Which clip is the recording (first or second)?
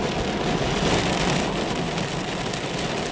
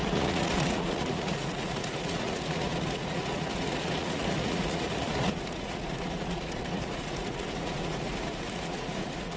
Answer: first